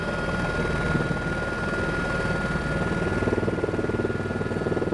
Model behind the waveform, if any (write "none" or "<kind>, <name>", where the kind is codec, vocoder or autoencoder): none